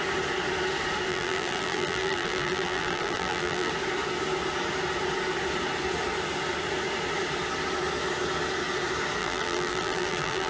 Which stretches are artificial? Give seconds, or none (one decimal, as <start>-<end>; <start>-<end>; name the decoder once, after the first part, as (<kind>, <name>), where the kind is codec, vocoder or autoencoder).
1.1-3.7 (vocoder, BigVGAN v2); 9.2-10.5